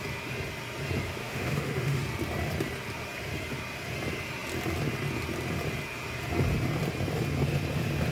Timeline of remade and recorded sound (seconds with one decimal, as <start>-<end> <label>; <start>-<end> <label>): 0.0-1.2 recorded; 1.2-2.0 remade; 2.0-8.1 recorded